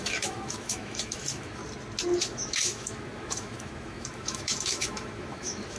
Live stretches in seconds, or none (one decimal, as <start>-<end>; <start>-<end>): 1.6-2.2